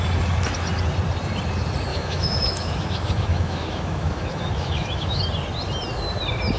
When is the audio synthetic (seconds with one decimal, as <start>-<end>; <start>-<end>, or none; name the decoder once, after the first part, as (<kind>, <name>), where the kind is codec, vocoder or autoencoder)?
1.9-5.2 (autoencoder, DAC-VAE)